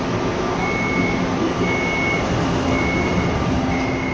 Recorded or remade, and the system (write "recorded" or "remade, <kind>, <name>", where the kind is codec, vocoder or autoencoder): recorded